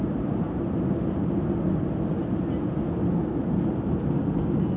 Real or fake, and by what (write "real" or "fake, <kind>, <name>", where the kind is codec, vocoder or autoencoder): real